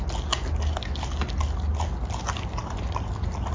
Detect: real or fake real